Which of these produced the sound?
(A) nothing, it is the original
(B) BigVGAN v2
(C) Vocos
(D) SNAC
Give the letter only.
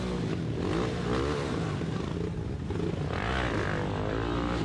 A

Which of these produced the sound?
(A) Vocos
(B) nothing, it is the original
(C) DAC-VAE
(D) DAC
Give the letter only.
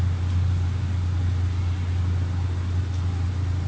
B